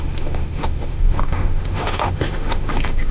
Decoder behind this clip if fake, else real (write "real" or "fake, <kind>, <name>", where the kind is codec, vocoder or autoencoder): fake, autoencoder, DAC-VAE